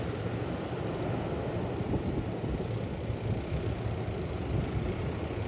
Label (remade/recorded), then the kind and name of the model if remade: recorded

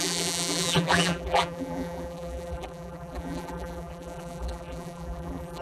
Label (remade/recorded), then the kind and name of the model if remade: remade, vocoder, BigVGAN v2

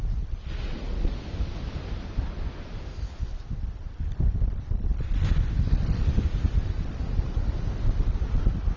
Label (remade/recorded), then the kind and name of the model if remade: recorded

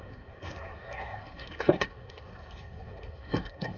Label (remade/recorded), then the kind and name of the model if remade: remade, codec, SNAC